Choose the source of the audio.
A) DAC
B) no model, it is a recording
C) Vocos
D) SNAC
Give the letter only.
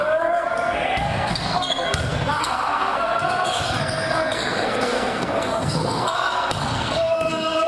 D